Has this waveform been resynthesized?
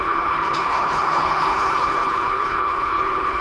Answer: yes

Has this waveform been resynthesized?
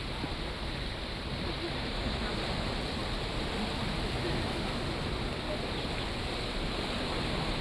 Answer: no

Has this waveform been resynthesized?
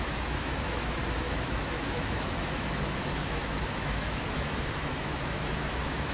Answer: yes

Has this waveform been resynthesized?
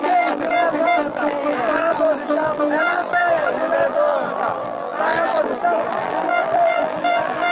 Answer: yes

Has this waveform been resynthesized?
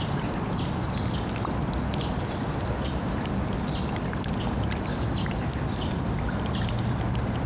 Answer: no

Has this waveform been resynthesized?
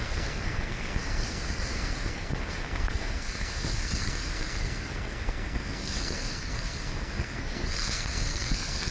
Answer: yes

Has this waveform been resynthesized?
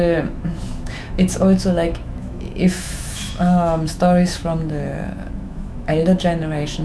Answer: yes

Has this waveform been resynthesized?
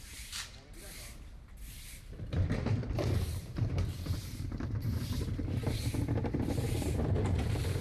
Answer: yes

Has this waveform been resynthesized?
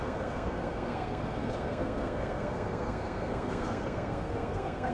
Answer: yes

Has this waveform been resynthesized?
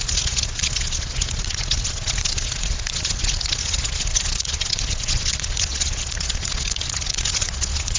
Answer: yes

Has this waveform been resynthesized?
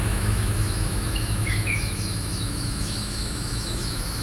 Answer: yes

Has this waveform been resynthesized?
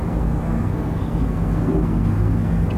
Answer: yes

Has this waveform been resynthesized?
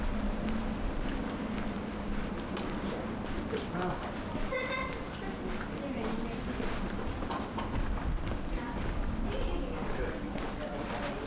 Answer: no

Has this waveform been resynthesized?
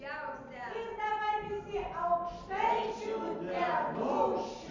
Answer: no